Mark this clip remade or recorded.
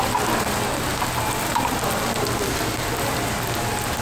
recorded